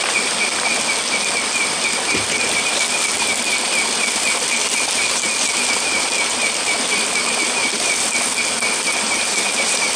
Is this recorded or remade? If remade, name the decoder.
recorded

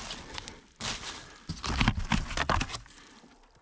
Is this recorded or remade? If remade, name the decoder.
recorded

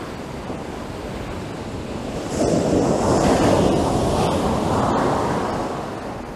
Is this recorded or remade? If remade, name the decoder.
recorded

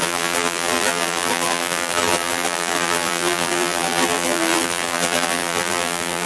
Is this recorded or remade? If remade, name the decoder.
remade, vocoder, BigVGAN v2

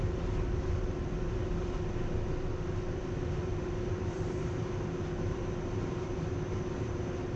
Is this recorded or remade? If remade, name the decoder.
recorded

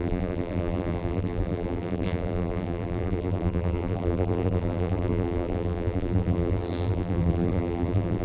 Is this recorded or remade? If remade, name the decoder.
remade, vocoder, BigVGAN v2